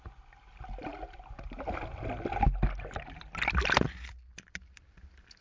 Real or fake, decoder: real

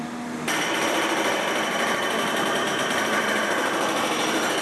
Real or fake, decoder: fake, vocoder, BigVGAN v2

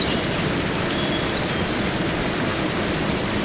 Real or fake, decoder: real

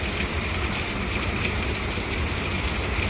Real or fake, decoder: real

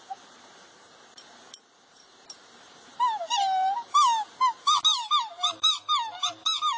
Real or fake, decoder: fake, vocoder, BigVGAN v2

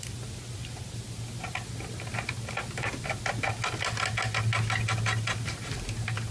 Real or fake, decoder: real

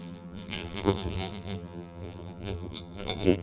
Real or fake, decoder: fake, vocoder, BigVGAN v2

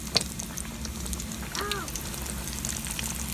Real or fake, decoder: real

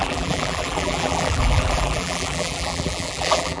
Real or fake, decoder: fake, vocoder, BigVGAN v2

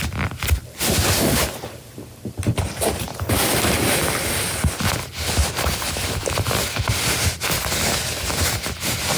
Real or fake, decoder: fake, vocoder, BigVGAN v2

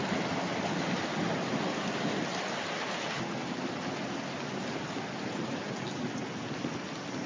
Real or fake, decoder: real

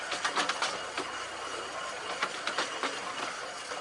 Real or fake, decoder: real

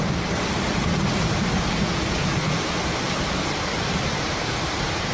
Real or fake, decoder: fake, vocoder, BigVGAN v2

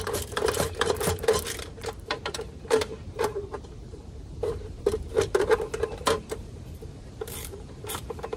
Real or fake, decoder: fake, vocoder, BigVGAN v2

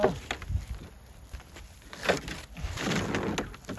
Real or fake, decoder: real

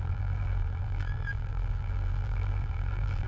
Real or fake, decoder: fake, vocoder, BigVGAN v2